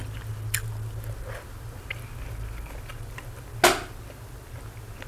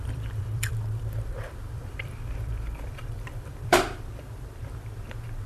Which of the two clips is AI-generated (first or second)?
second